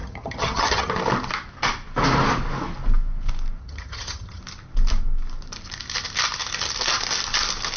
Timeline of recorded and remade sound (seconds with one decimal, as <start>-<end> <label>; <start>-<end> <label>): 0.0-0.9 remade; 0.9-3.6 recorded; 3.6-4.4 remade; 4.4-7.8 recorded